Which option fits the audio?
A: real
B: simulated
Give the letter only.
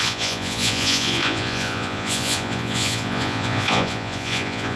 B